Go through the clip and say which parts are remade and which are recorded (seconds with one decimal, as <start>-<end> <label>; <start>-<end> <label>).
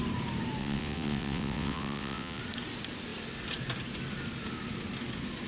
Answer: 0.0-0.6 recorded; 0.6-2.4 remade; 2.4-5.5 recorded